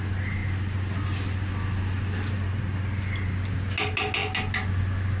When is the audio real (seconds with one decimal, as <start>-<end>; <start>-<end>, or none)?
0.0-5.2